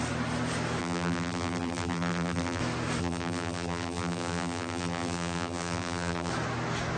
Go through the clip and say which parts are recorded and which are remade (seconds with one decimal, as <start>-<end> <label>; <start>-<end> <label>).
0.0-0.8 recorded; 0.8-2.6 remade; 2.6-3.0 recorded; 3.0-6.3 remade; 6.3-7.0 recorded